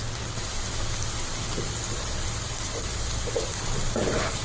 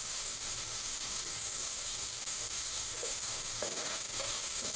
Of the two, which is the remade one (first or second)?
second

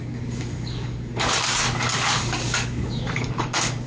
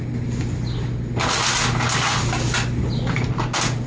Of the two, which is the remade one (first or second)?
first